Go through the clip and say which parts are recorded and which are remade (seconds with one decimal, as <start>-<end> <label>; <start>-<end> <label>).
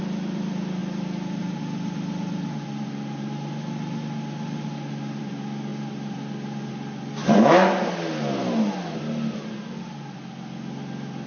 0.0-11.3 recorded